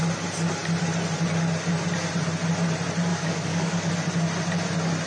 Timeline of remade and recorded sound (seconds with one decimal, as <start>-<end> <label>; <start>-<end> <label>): 0.0-3.1 recorded; 3.1-3.9 remade; 3.9-5.1 recorded